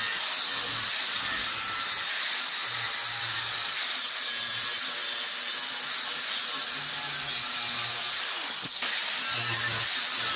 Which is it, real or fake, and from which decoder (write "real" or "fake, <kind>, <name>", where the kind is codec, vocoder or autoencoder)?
real